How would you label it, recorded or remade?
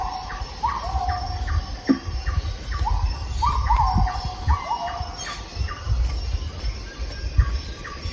recorded